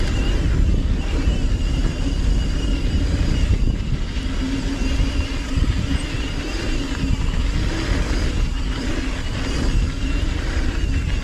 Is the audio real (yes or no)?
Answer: yes